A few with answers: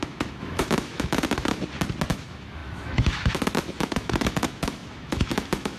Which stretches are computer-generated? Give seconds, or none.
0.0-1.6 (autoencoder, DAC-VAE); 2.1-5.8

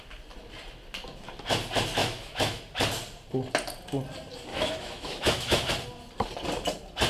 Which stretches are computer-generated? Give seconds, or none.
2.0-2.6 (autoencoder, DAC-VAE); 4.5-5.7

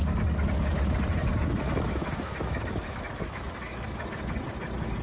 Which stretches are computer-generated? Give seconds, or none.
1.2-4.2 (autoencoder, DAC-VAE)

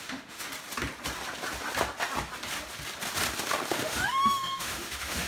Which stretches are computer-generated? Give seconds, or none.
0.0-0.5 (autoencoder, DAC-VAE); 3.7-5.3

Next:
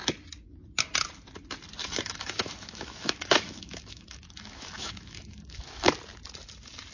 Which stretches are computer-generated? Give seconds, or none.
1.8-5.9 (autoencoder, DAC-VAE)

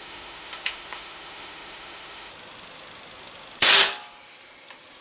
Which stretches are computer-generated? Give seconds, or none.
0.0-2.3 (autoencoder, DAC-VAE)